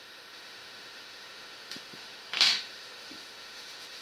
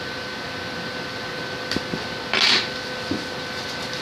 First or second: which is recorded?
second